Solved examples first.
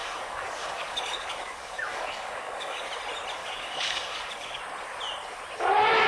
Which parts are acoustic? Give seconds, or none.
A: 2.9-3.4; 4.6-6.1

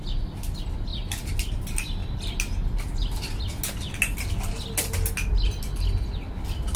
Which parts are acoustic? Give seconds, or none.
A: 0.0-6.8

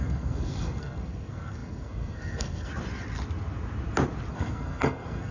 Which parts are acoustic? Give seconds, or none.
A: 2.7-4.3